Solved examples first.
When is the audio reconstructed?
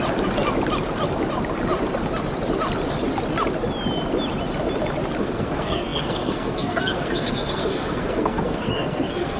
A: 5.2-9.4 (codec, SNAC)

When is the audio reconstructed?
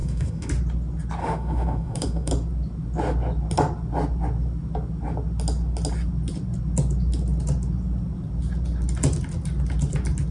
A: 0.0-0.5 (autoencoder, DAC-VAE); 1.2-2.3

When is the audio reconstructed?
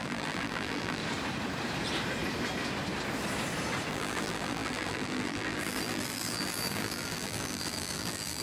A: 0.0-1.0 (vocoder, BigVGAN v2); 3.9-8.4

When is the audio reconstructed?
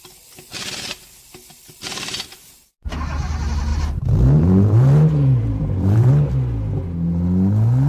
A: 3.7-6.1 (vocoder, BigVGAN v2)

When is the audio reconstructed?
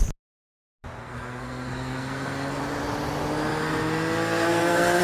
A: 1.0-2.6 (codec, SNAC); 3.5-5.0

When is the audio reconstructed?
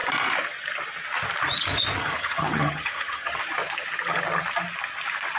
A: 2.0-3.4 (vocoder, HiFi-GAN)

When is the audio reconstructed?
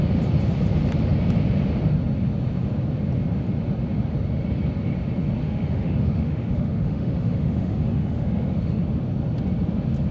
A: 5.4-8.8 (autoencoder, DAC-VAE)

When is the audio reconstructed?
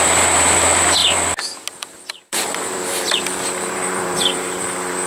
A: 0.0-1.0 (vocoder, BigVGAN v2); 1.8-5.1